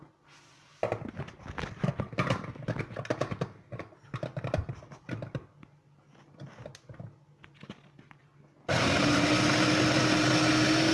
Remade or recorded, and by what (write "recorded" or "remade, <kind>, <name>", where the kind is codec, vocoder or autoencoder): recorded